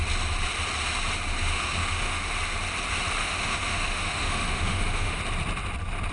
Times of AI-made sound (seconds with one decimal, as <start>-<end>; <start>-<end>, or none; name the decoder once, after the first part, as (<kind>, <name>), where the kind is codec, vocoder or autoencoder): 1.4-2.3 (autoencoder, DAC-VAE); 3.2-5.2